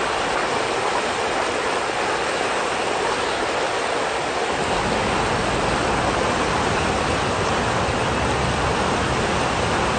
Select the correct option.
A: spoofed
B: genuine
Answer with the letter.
B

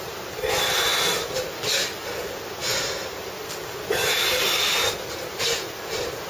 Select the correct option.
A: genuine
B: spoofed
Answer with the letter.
A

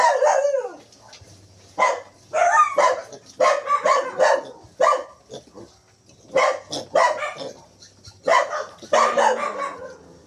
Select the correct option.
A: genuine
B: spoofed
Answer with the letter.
A